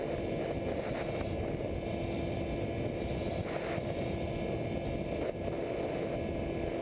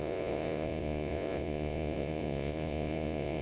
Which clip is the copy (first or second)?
second